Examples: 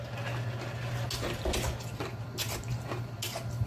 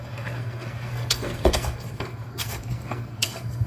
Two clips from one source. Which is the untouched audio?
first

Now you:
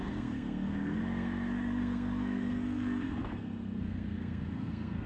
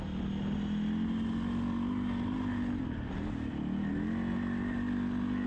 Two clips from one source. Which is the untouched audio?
second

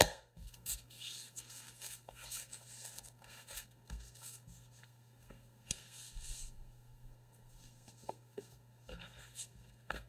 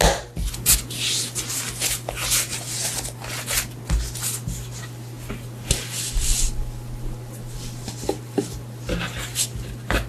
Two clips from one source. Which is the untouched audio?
second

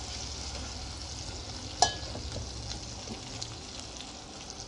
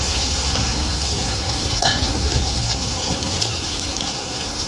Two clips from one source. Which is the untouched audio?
first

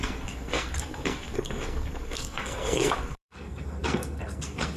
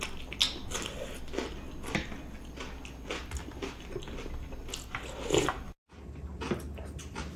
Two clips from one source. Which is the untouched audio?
second